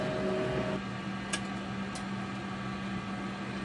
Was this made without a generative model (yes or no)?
yes